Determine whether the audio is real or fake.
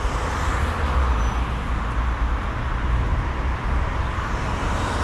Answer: real